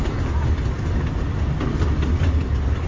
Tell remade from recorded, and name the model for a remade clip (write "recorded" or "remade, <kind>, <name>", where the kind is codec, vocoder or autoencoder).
recorded